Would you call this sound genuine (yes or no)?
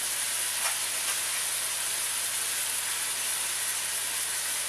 yes